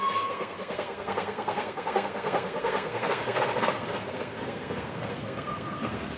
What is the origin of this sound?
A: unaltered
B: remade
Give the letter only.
B